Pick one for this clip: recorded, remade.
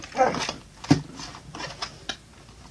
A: recorded